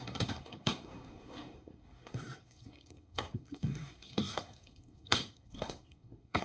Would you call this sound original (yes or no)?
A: no